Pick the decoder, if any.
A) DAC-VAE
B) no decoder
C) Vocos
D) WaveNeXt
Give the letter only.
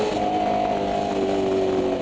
B